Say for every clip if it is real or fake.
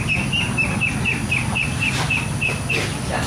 real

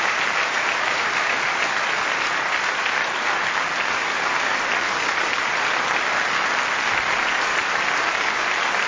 real